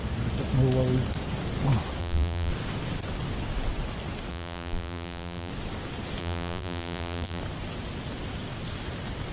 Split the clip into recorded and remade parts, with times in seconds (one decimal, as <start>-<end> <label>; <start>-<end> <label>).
0.0-2.0 recorded; 2.0-2.5 remade; 2.5-4.3 recorded; 4.3-5.5 remade; 5.5-6.2 recorded; 6.2-7.4 remade; 7.4-9.3 recorded

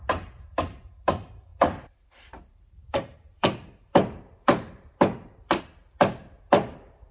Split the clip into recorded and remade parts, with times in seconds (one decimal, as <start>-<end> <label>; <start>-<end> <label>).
0.0-1.5 recorded; 1.5-5.6 remade; 5.6-7.1 recorded

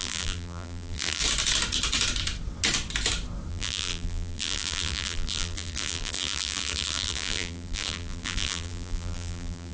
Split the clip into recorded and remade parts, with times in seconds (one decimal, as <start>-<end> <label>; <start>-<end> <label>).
0.0-1.2 remade; 1.2-3.5 recorded; 3.5-9.7 remade

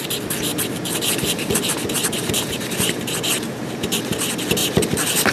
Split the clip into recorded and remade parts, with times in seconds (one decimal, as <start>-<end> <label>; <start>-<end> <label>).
0.0-0.5 recorded; 0.5-3.7 remade; 3.7-4.6 recorded; 4.6-5.3 remade

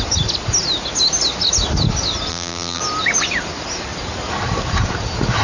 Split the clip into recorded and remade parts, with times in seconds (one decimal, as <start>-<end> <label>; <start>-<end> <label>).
0.0-2.3 recorded; 2.3-2.8 remade; 2.8-5.4 recorded